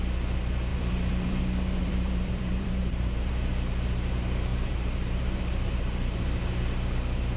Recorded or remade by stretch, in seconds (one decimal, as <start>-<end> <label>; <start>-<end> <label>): 0.0-0.7 recorded; 0.7-1.4 remade; 1.4-1.8 recorded; 1.8-3.3 remade; 3.3-4.5 recorded; 4.5-6.4 remade; 6.4-7.4 recorded